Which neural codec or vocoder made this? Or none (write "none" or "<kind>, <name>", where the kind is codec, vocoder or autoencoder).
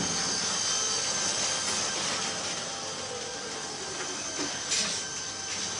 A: none